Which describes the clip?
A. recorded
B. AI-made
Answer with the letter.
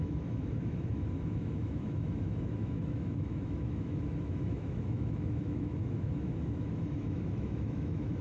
B